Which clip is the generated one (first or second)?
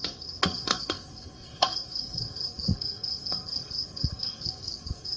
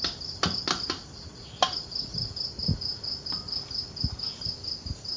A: first